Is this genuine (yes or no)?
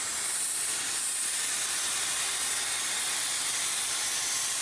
yes